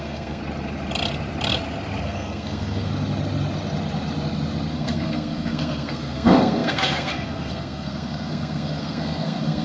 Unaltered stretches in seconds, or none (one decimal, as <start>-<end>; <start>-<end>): 0.4-2.0; 2.9-4.7